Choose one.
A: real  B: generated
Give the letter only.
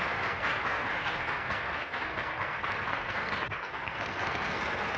B